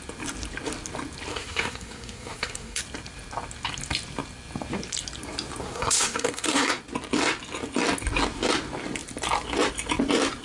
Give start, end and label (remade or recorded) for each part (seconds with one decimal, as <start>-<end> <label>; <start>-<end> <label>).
0.0-1.3 recorded; 1.3-2.8 remade; 2.8-5.6 recorded; 5.6-6.8 remade; 6.8-10.4 recorded